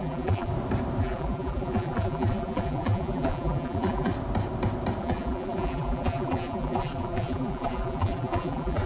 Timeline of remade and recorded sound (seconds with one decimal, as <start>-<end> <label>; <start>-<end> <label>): 0.0-0.5 remade; 0.5-1.0 recorded; 1.0-4.1 remade; 4.1-5.0 recorded; 5.0-8.9 remade